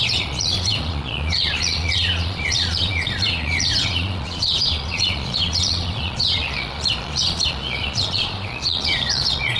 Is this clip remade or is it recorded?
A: remade